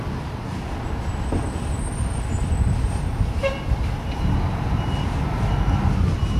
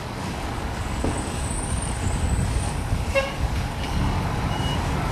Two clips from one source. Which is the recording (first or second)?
first